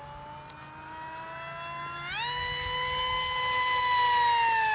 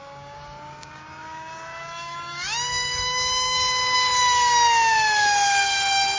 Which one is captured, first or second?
first